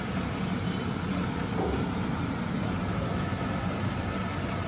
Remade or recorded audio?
remade